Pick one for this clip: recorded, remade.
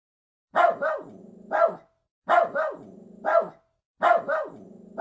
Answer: recorded